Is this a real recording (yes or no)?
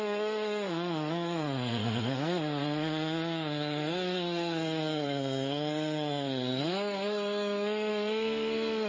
no